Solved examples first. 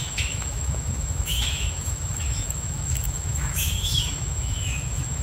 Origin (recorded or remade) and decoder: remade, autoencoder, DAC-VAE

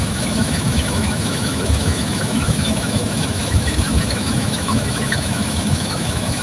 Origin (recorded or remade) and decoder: remade, autoencoder, DAC-VAE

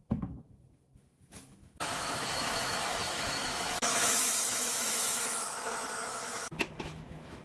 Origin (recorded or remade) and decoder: remade, autoencoder, DAC-VAE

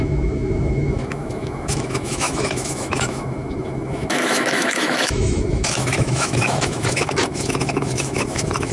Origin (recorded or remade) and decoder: remade, autoencoder, DAC-VAE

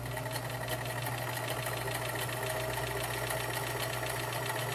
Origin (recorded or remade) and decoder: recorded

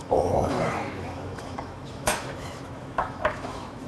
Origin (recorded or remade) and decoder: remade, autoencoder, DAC-VAE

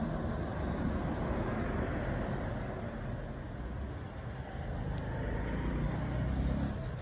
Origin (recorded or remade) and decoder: recorded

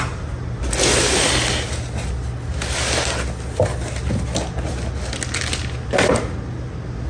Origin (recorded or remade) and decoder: recorded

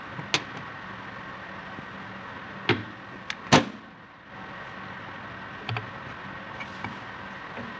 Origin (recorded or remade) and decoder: recorded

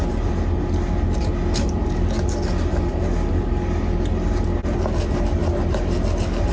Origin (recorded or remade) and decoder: recorded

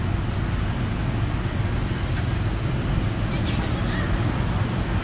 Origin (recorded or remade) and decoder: recorded